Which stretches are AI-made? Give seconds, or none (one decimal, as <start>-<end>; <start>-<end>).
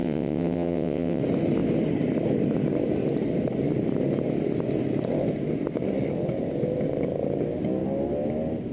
0.0-1.2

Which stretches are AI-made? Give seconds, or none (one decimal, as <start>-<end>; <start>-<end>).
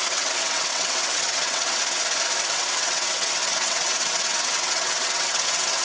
0.0-1.8; 2.5-5.8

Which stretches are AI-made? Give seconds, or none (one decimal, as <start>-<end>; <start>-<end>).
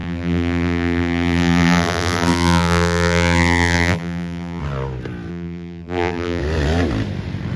0.0-4.6; 5.3-6.4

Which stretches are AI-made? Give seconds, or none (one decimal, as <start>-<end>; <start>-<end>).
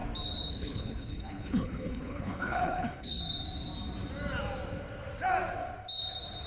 0.5-3.2